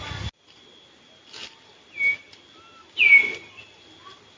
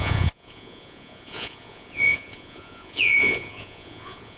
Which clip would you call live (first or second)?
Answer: first